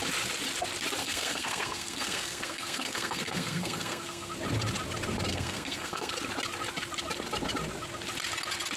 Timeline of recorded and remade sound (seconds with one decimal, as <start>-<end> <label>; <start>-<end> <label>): 0.0-1.0 recorded; 1.0-4.3 remade; 4.3-5.3 recorded; 5.3-6.1 remade; 6.1-8.8 recorded